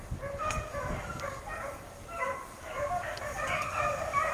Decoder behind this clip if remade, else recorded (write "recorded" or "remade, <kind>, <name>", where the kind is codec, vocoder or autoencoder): remade, codec, DAC